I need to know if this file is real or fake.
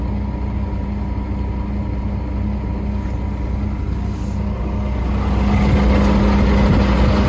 real